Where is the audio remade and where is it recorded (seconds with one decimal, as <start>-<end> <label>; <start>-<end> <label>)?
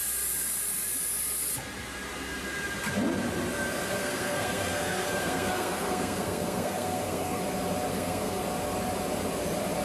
0.0-4.0 recorded; 4.0-7.4 remade; 7.4-7.9 recorded; 7.9-8.4 remade; 8.4-9.8 recorded